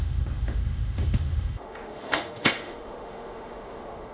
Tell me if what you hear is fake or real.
fake